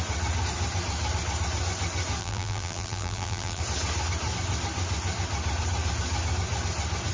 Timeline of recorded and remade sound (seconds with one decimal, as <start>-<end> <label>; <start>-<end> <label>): 0.0-2.2 recorded; 2.2-3.6 remade; 3.6-7.1 recorded